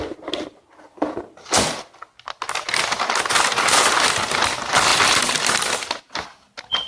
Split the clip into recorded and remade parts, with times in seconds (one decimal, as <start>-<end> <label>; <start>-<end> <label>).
0.0-6.9 recorded